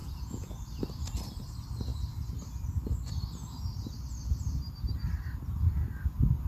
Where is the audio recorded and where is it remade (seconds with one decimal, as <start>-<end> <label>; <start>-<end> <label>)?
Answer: 0.0-0.5 remade; 0.5-6.5 recorded